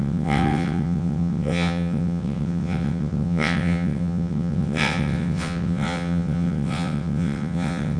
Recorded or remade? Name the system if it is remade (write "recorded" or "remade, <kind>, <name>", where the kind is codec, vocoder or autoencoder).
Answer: remade, vocoder, WaveNeXt